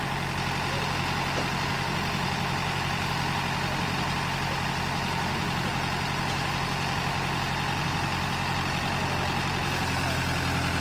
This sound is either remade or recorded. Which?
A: recorded